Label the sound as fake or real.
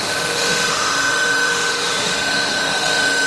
fake